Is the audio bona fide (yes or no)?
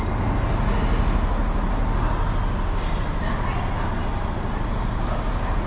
yes